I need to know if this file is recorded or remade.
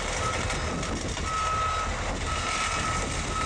recorded